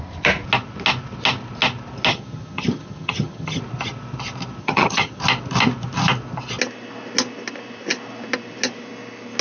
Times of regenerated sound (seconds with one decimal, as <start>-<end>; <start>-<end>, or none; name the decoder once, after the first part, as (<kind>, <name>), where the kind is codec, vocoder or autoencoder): 2.1-3.6 (vocoder, HiFi-GAN); 4.6-5.2